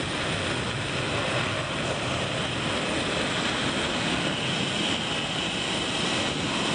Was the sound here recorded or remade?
recorded